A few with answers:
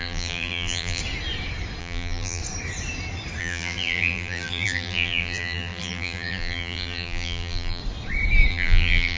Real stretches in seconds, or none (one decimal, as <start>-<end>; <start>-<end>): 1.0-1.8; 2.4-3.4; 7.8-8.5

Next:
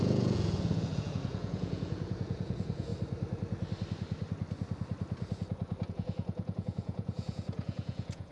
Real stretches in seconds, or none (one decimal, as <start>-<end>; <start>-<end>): 2.9-5.9

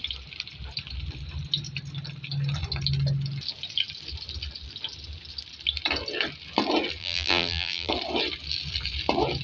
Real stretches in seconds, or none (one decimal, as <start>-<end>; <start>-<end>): 0.0-7.0; 7.9-9.4

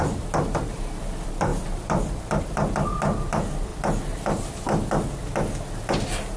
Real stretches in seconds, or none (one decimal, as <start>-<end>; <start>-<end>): 3.7-6.4

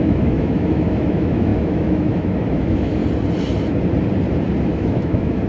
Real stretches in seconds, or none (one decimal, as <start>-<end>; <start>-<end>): 3.0-4.6